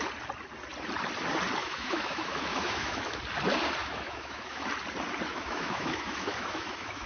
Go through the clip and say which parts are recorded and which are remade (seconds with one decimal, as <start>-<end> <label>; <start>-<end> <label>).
0.0-1.6 recorded; 1.6-3.2 remade; 3.2-3.8 recorded; 3.8-4.7 remade; 4.7-5.3 recorded; 5.3-7.1 remade